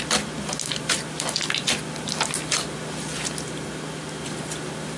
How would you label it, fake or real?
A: real